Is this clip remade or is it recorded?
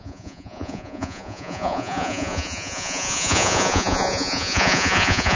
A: remade